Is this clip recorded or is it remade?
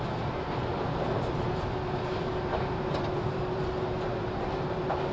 remade